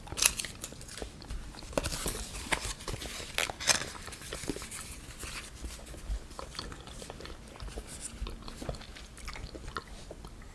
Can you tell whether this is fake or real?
real